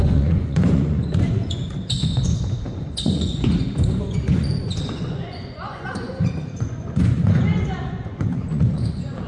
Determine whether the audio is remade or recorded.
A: remade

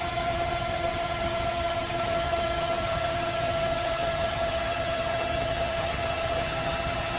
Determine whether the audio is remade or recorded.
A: remade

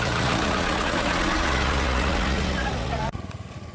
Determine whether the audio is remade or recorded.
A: remade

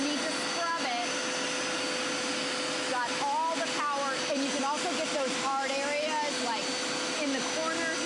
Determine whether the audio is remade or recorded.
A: recorded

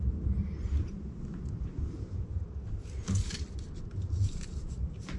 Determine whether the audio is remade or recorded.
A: recorded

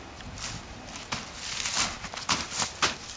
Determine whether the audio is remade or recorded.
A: recorded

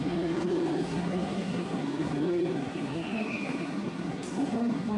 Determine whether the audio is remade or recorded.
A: remade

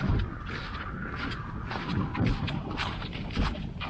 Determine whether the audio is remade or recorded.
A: recorded